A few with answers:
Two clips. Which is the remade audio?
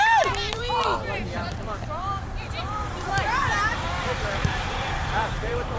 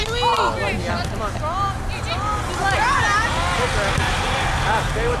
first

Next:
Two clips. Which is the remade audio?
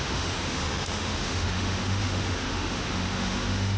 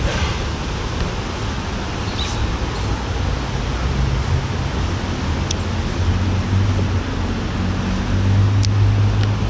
first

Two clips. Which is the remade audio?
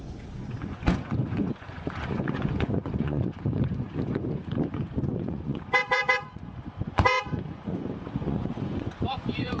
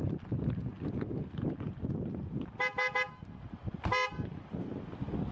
first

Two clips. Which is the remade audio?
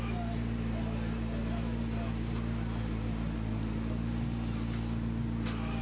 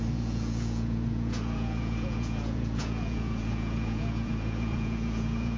second